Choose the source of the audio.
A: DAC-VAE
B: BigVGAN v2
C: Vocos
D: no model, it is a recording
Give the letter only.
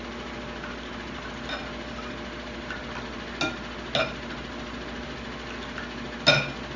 D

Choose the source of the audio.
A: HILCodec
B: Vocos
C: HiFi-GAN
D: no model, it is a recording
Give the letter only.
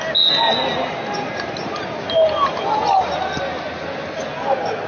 D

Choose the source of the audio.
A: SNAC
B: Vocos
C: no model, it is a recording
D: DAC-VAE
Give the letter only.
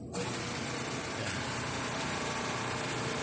C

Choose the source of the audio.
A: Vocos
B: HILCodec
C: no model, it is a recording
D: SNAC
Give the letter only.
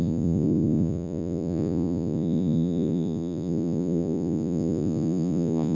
A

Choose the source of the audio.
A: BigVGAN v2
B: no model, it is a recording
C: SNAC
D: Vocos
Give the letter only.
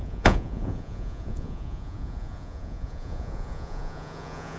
D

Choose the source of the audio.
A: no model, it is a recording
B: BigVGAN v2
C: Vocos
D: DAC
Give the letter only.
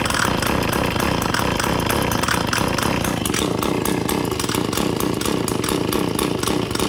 A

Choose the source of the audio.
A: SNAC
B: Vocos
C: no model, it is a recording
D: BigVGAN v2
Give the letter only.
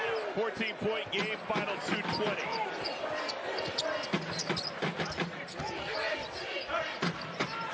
C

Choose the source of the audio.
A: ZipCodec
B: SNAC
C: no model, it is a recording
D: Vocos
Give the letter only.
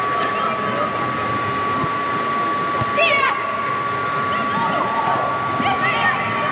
C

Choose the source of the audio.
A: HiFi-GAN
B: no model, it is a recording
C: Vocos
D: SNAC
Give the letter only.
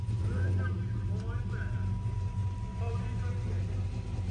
B